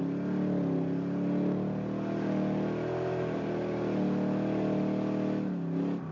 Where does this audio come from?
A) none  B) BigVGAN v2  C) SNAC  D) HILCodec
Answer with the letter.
A